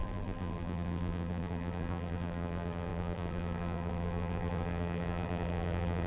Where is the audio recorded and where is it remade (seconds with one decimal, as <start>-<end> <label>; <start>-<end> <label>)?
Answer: 0.0-6.1 remade